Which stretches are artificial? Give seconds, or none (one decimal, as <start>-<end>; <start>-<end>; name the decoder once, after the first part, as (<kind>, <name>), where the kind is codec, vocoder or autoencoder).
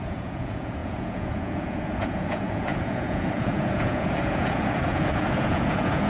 0.0-6.1 (vocoder, Vocos)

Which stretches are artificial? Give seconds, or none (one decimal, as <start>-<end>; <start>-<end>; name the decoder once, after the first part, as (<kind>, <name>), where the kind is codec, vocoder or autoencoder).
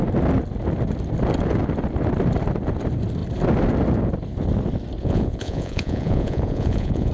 5.0-7.1 (vocoder, Vocos)